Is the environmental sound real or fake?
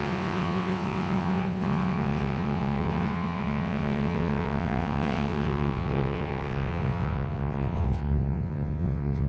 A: fake